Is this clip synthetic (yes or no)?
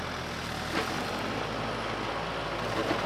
no